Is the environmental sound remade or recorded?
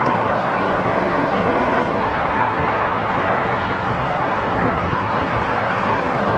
remade